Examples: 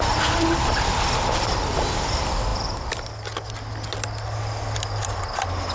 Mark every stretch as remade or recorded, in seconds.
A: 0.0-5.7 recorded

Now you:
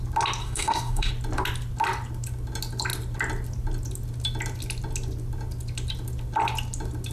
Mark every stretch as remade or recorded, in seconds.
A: 0.0-0.4 recorded; 0.4-1.1 remade; 1.1-7.1 recorded

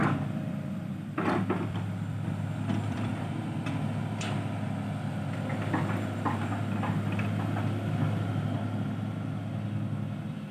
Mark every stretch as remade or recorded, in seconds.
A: 0.0-3.3 remade; 3.3-10.5 recorded